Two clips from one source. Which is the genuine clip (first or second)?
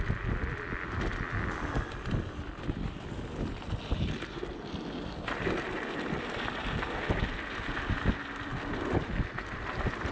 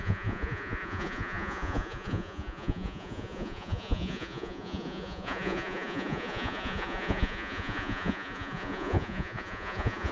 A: first